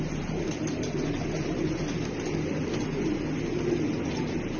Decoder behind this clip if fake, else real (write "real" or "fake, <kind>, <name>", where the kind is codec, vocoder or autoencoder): real